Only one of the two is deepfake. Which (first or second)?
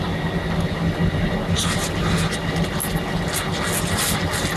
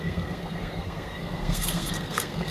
second